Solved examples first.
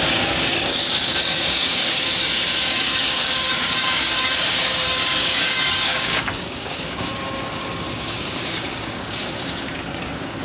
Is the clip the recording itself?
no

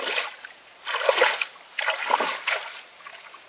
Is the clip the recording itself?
yes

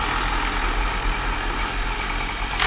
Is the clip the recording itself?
yes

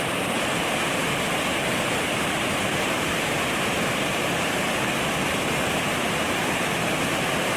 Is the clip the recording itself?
no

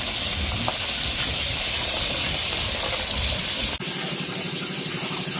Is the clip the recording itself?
yes